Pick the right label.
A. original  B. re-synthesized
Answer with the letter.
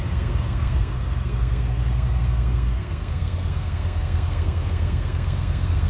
B